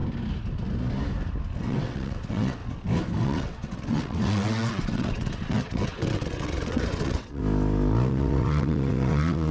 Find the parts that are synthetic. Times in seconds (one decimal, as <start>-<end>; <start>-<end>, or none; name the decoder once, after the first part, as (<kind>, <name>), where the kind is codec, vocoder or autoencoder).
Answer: 1.6-2.6 (vocoder, WaveNeXt); 3.2-7.4; 8.1-9.5